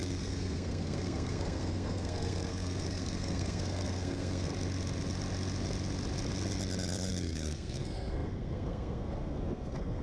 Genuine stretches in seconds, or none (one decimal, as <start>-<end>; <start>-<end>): 4.5-7.1